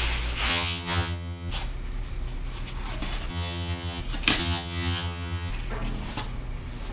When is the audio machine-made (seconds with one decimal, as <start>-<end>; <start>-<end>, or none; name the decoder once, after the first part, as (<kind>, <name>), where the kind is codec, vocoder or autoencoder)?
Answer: 0.5-1.5 (vocoder, HiFi-GAN); 3.3-4.0; 4.4-5.5